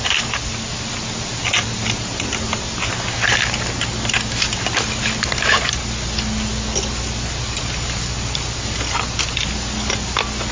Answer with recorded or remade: recorded